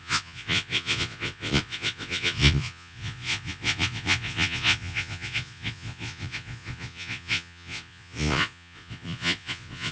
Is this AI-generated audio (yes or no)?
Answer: yes